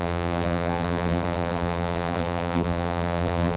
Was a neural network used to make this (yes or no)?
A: yes